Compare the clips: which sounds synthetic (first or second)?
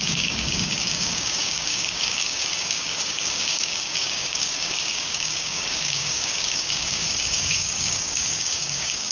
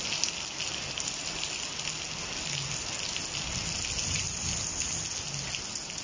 first